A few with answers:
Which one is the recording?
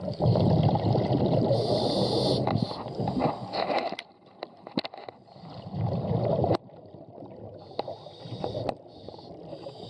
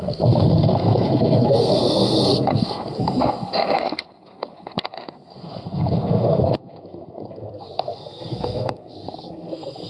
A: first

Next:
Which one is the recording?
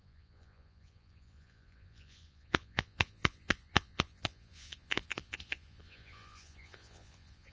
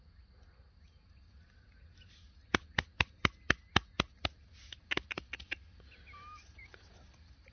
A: second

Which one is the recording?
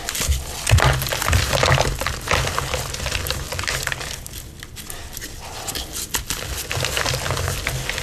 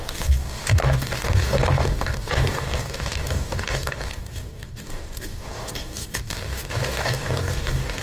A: first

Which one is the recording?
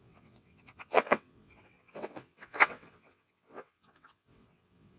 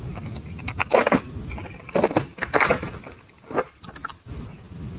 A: second